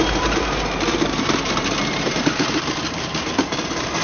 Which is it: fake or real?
fake